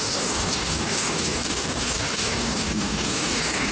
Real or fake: fake